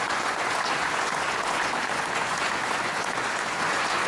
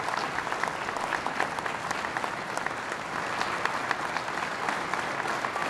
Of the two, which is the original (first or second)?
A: second